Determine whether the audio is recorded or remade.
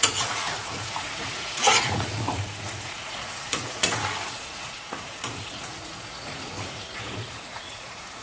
remade